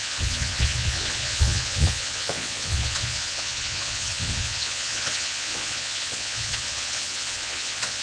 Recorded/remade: remade